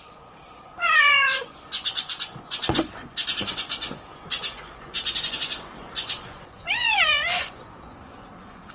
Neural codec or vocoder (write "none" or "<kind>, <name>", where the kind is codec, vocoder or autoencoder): vocoder, Vocos